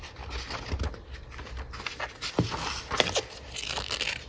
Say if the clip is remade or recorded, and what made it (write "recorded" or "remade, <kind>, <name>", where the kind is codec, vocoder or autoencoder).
recorded